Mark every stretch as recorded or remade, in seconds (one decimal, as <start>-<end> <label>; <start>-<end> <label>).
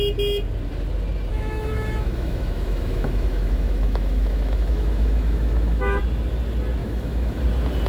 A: 0.0-1.3 recorded; 1.3-6.0 remade; 6.0-6.8 recorded; 6.8-7.4 remade; 7.4-7.9 recorded